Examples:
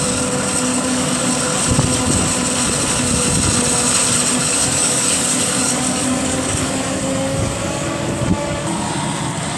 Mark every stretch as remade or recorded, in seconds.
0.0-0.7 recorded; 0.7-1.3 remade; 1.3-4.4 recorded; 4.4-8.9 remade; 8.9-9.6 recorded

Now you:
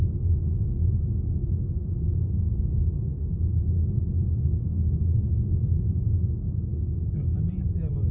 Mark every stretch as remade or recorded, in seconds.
0.0-8.1 recorded

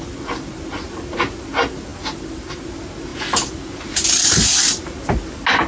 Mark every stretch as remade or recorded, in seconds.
0.0-5.7 recorded

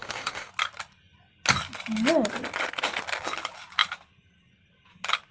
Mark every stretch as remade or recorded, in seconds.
0.0-0.5 remade; 0.5-5.3 recorded

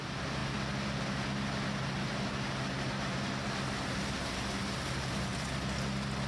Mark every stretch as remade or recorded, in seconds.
0.0-6.3 recorded

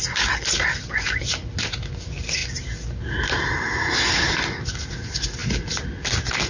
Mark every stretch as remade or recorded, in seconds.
0.0-6.5 recorded